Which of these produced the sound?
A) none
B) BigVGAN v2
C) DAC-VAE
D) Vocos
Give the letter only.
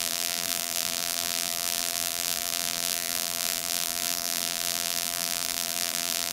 B